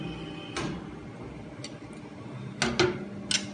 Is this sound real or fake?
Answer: real